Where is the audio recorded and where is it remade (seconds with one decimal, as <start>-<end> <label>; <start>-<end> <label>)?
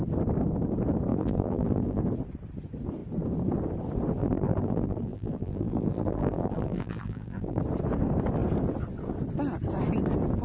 0.0-1.1 recorded; 1.1-2.0 remade; 2.0-4.2 recorded; 4.2-7.6 remade; 7.6-10.4 recorded